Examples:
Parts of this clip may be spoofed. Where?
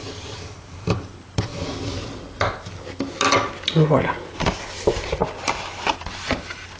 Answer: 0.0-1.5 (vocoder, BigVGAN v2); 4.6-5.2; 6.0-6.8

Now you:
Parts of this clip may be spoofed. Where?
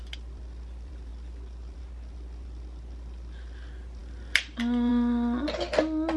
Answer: none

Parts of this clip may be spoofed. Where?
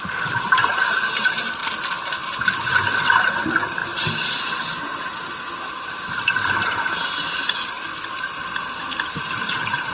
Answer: 0.0-1.6 (vocoder, BigVGAN v2); 3.2-3.8; 8.1-9.9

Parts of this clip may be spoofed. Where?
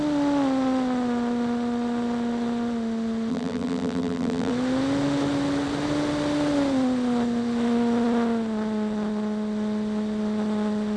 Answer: 3.3-4.5 (vocoder, BigVGAN v2)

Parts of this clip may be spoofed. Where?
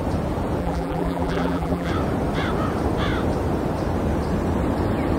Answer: 0.6-1.9 (vocoder, BigVGAN v2)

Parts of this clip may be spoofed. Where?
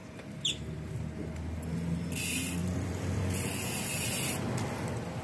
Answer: 0.0-0.5 (vocoder, BigVGAN v2); 2.6-3.2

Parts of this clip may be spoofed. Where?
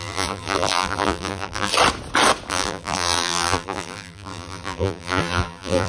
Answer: 0.0-1.7 (vocoder, BigVGAN v2); 2.5-5.9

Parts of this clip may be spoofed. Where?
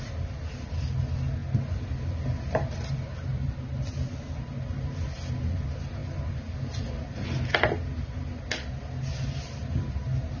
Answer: none